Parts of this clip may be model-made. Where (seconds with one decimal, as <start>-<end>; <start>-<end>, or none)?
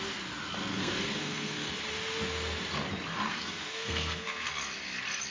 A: 0.7-1.7; 3.3-4.5